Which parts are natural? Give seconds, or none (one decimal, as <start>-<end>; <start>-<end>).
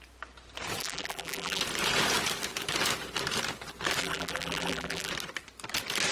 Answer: 0.0-0.8; 1.6-4.0; 5.1-6.1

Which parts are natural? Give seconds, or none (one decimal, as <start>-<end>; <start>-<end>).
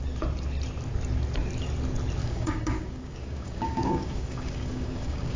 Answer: 0.0-2.2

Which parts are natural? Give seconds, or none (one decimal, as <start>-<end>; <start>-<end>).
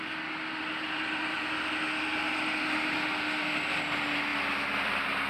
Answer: 0.0-5.3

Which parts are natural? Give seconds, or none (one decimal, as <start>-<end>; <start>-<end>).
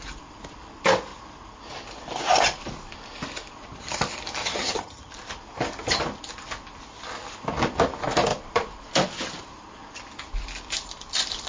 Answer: 0.0-4.4; 5.1-11.5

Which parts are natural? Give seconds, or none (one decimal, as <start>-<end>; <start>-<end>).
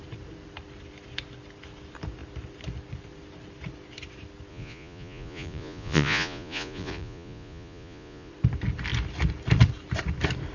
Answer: 0.0-4.5; 8.3-10.5